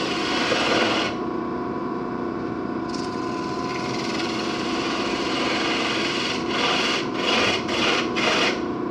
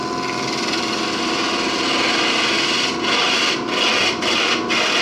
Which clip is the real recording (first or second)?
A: second